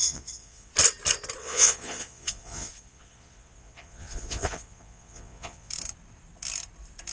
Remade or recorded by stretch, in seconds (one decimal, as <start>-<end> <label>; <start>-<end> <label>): 0.0-0.7 remade; 0.7-1.4 recorded; 1.4-5.7 remade; 5.7-7.1 recorded